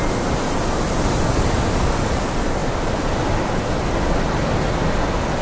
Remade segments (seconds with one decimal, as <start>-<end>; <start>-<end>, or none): none